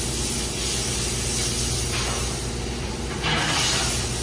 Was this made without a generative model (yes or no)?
yes